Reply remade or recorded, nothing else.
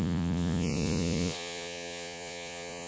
remade